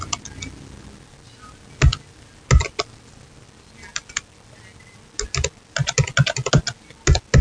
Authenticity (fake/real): real